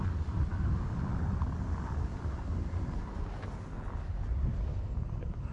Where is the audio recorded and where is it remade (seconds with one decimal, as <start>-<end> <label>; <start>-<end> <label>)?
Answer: 0.0-5.5 recorded